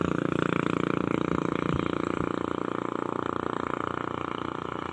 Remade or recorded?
recorded